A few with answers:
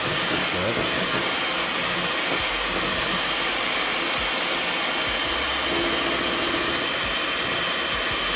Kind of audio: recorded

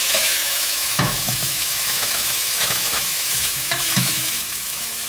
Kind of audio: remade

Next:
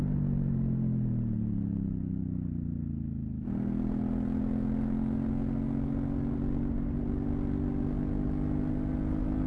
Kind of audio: recorded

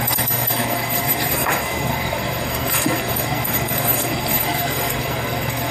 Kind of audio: remade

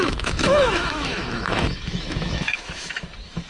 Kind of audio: remade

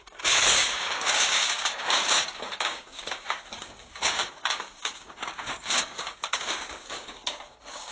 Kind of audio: remade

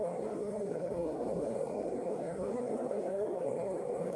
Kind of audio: remade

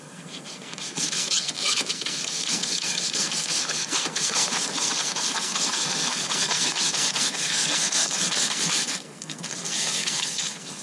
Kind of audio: remade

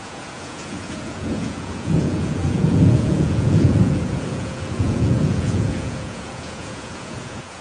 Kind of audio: remade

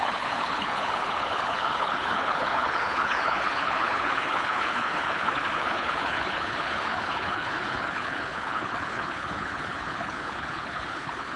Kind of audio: remade